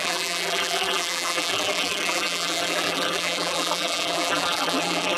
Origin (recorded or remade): remade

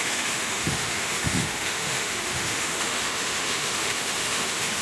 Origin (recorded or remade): remade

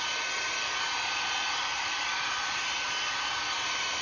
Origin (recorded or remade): remade